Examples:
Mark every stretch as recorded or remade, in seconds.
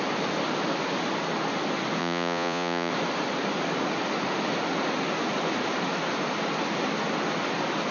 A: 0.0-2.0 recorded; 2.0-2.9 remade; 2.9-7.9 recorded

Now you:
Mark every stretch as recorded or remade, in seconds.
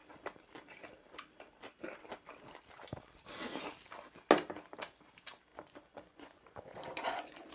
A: 0.0-5.5 recorded; 5.5-7.5 remade